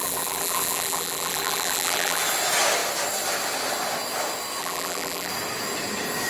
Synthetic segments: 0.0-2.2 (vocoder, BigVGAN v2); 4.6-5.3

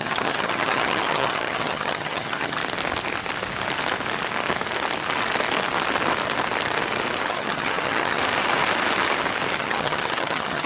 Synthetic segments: 0.0-2.6 (vocoder, HiFi-GAN); 7.3-8.2; 9.6-10.7

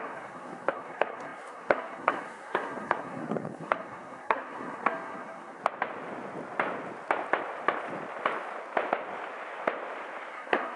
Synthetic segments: 0.0-5.6 (codec, SNAC); 10.3-10.8

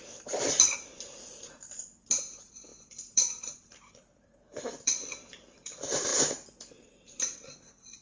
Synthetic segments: 0.0-6.1 (vocoder, BigVGAN v2); 6.7-8.0

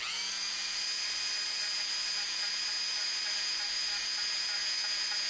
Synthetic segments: none

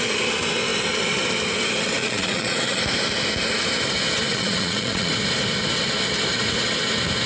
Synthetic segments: 2.0-2.8 (vocoder, Vocos); 4.3-5.1

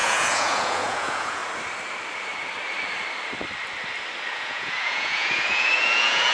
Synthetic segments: 0.0-1.4 (vocoder, Vocos); 4.3-6.3

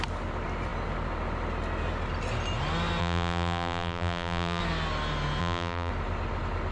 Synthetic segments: 3.0-4.6 (vocoder, BigVGAN v2); 5.4-5.9